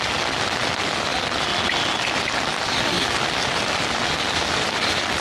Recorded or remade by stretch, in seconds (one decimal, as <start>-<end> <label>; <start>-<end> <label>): 0.0-5.2 recorded